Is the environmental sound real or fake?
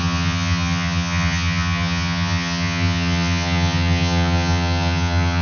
fake